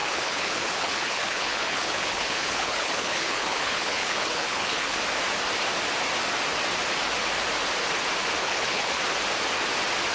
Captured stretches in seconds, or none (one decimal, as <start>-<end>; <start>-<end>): 5.0-8.4; 9.0-10.1